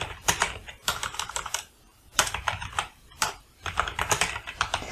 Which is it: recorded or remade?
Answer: remade